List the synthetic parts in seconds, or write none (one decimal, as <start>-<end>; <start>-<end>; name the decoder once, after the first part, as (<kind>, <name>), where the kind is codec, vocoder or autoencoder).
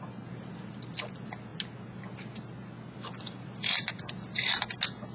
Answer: none